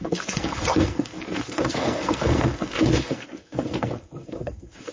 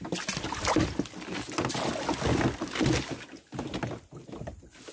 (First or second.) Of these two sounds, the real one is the second